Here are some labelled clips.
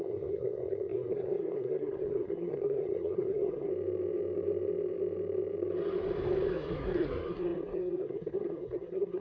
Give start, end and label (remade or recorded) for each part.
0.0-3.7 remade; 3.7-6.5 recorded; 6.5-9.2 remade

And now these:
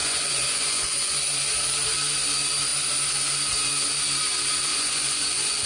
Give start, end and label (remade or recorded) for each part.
0.0-1.2 remade; 1.2-4.7 recorded; 4.7-5.7 remade